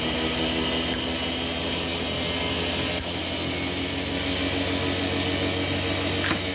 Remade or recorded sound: recorded